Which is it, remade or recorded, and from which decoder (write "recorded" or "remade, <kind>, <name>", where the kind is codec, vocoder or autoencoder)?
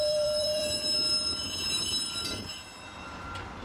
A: remade, vocoder, BigVGAN v2